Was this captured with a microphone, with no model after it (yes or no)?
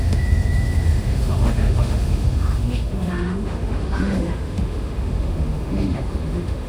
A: no